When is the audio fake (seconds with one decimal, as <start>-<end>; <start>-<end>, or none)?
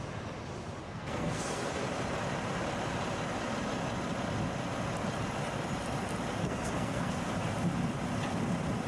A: 0.8-1.8; 6.4-7.1